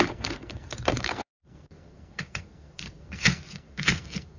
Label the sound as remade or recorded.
remade